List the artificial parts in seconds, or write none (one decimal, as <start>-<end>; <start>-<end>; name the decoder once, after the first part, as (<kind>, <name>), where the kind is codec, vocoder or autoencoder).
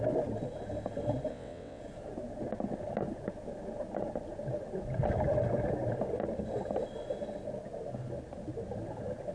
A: 1.3-1.8 (vocoder, WaveNeXt)